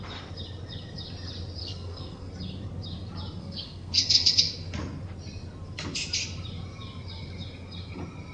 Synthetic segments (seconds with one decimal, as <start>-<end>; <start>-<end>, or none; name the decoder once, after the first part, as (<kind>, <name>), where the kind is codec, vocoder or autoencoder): 1.6-2.3 (codec, SNAC); 3.4-4.5